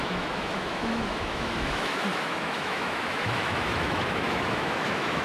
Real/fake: fake